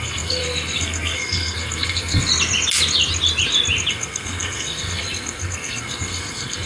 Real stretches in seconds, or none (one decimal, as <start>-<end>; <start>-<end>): 2.3-3.9